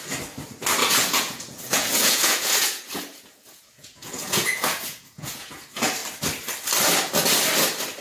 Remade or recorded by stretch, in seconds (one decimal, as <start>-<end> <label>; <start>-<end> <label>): 0.0-0.8 recorded; 0.8-5.6 remade; 5.6-8.0 recorded